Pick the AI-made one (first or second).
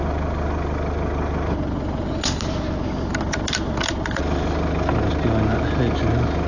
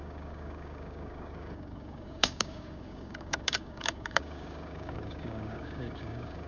second